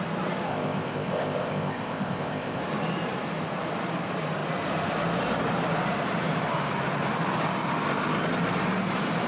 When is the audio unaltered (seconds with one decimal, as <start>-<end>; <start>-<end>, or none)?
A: 0.0-0.5; 2.6-9.3